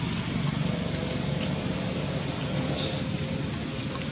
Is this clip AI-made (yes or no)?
no